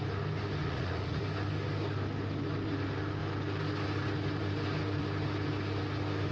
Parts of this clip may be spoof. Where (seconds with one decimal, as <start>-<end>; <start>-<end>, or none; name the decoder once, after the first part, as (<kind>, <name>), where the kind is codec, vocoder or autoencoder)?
0.6-1.2 (vocoder, Vocos)